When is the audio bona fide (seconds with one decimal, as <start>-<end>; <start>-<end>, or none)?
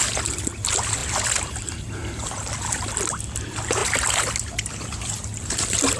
0.0-1.0; 2.5-6.0